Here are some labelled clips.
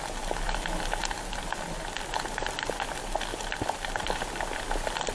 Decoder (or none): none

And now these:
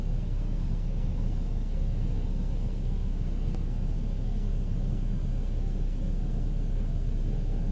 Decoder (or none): codec, SNAC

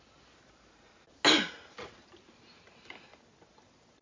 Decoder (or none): none